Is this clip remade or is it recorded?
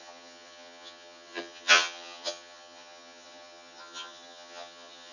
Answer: remade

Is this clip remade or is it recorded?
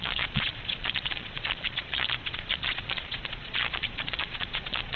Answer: remade